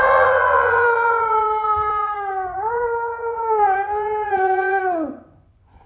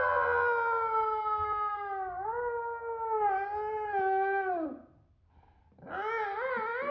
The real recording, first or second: second